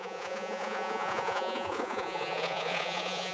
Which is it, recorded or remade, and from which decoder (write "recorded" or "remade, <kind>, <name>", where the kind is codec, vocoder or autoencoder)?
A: remade, vocoder, Vocos